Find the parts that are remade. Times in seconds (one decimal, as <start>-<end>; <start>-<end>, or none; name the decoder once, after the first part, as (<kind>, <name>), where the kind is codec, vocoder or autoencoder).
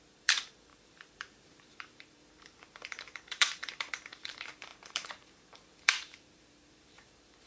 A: 0.0-7.5 (vocoder, BigVGAN v2)